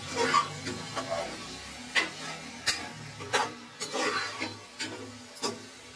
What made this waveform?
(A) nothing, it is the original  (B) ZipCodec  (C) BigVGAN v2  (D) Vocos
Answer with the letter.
A